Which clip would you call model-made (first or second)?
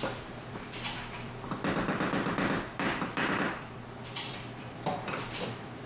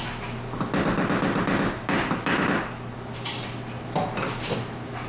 first